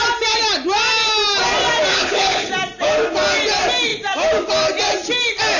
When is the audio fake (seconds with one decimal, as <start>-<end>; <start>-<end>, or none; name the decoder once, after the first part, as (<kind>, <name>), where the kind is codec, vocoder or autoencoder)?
1.9-2.5 (codec, HILCodec)